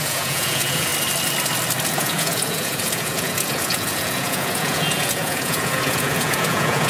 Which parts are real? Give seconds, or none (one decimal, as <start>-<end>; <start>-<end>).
0.9-1.9

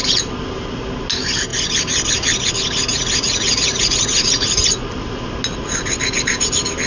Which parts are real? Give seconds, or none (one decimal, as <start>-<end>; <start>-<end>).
0.0-2.9; 4.6-6.9

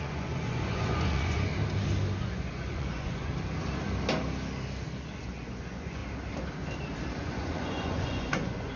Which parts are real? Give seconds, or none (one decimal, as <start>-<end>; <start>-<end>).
1.5-2.2; 3.3-5.2; 6.0-7.1

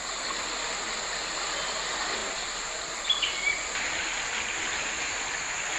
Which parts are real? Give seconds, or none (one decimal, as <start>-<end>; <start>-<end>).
0.0-5.8

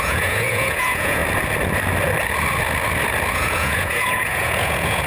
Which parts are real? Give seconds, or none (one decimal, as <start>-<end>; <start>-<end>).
1.2-3.3